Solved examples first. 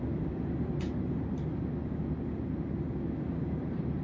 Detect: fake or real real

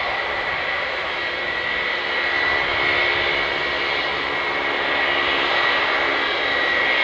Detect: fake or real real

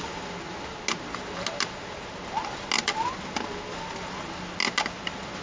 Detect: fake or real real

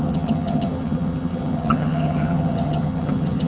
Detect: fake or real fake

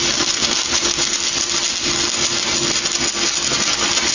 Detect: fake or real real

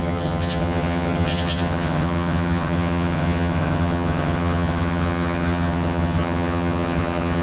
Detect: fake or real fake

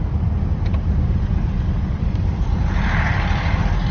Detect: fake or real real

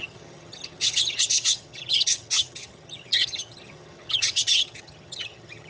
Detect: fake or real fake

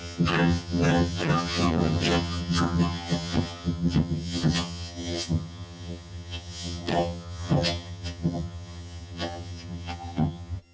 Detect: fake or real fake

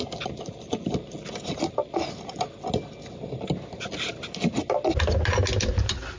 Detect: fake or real real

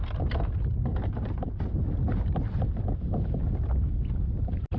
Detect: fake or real real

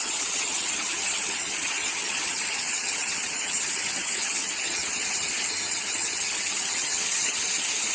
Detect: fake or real fake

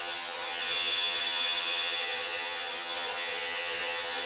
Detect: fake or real fake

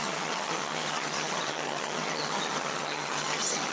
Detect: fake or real fake